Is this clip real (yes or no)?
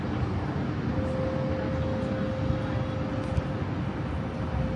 yes